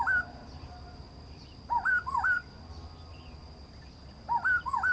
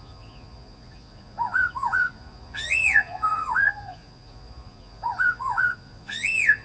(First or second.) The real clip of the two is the first